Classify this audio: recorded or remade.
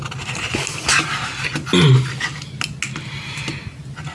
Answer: recorded